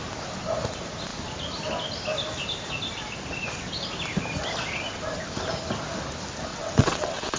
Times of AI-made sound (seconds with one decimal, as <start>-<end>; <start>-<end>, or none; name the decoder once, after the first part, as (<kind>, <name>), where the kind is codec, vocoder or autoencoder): 6.5-7.4 (vocoder, WaveNeXt)